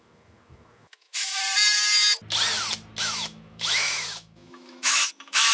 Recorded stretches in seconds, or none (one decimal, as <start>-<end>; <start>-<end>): 1.4-3.0